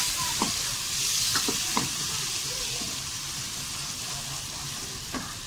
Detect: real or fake real